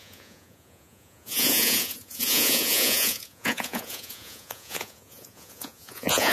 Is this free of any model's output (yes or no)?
no